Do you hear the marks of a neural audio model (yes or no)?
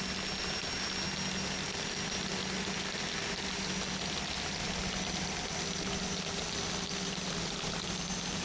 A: no